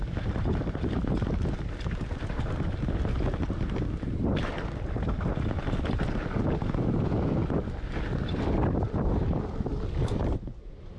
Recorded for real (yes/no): yes